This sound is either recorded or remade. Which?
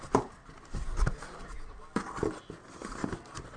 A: recorded